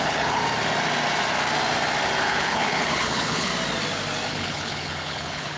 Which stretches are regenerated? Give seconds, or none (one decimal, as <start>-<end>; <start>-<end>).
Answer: 0.0-0.4; 2.2-3.5; 4.3-5.6